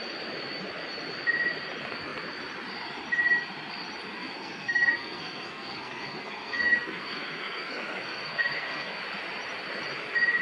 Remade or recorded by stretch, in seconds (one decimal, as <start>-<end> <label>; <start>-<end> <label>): 0.0-4.2 recorded; 4.2-9.0 remade; 9.0-10.4 recorded